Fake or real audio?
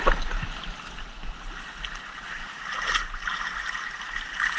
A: real